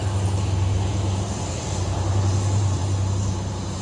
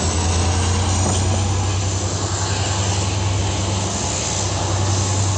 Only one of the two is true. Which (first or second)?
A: second